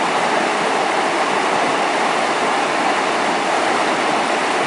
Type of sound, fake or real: real